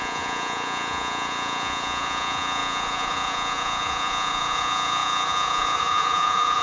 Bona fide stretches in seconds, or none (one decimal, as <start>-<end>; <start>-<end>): none